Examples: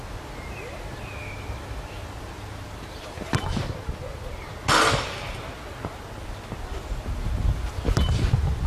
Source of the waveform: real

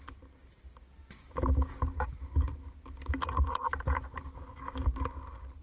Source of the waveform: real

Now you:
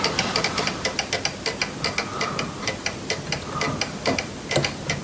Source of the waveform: real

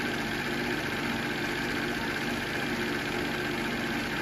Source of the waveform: real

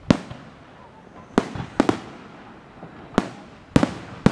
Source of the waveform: real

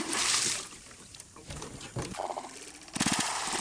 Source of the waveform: fake